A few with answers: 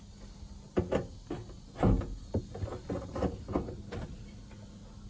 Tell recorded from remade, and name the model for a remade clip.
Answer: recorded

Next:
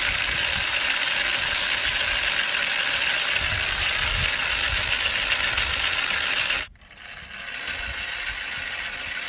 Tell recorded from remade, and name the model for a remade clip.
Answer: recorded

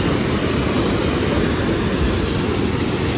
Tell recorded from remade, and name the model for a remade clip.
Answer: recorded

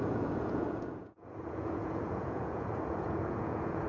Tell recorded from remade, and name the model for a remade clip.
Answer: remade, vocoder, Vocos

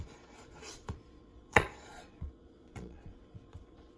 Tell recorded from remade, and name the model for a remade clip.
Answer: remade, vocoder, Vocos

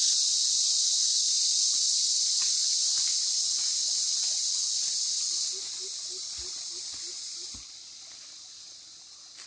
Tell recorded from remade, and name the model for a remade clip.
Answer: recorded